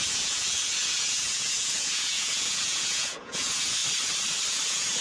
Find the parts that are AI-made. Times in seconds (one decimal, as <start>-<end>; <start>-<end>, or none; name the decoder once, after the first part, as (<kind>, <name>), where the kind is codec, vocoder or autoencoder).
0.0-3.8 (vocoder, Vocos); 4.5-5.0